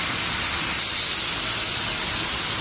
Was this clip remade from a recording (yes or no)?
no